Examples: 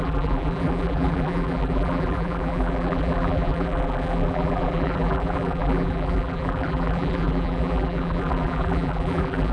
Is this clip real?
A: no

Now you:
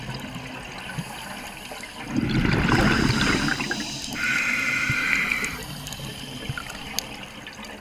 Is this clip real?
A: yes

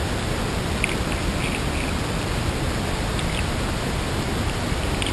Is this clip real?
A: yes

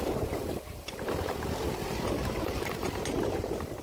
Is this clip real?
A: no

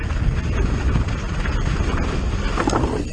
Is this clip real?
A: yes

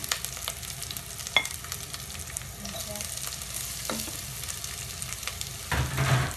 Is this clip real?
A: yes